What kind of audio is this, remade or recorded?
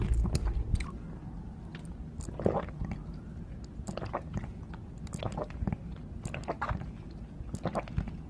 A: recorded